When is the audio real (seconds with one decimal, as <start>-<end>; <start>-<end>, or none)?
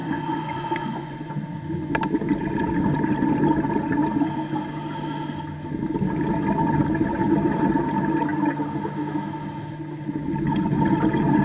1.3-11.4